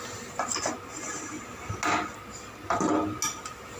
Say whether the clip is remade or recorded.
recorded